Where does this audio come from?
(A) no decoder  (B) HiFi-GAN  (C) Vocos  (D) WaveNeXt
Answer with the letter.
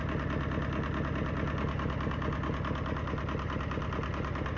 A